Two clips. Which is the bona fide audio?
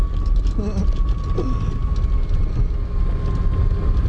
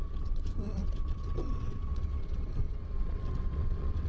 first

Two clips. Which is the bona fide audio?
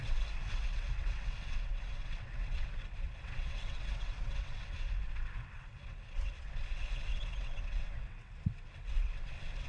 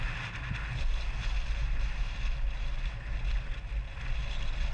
second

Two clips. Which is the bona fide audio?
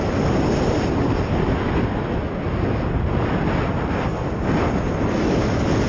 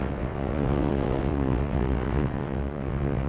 first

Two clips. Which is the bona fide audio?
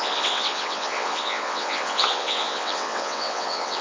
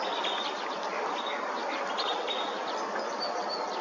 second